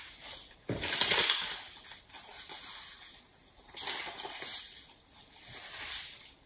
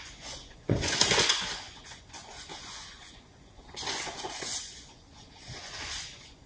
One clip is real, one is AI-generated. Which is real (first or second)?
first